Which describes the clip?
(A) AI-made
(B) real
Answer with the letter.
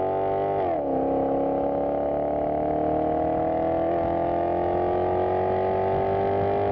B